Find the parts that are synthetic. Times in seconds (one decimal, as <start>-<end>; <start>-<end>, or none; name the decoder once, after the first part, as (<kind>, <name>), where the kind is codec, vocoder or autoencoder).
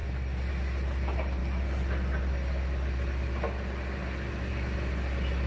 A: none